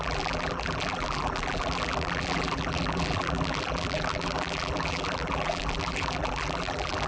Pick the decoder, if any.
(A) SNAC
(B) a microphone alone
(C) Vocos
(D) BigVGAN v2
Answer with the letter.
D